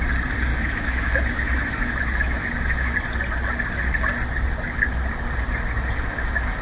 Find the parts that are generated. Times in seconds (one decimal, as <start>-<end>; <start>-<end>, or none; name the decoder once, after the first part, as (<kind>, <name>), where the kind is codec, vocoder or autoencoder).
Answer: 0.5-3.0 (autoencoder, DAC-VAE)